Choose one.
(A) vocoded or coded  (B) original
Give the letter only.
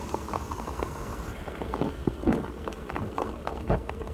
A